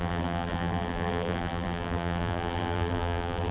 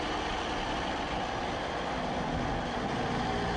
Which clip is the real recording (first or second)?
second